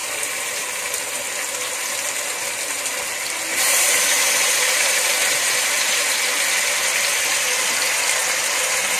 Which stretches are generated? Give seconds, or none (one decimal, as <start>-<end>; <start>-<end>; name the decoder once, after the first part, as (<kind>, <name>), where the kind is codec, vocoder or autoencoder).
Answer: 3.5-6.0 (vocoder, BigVGAN v2)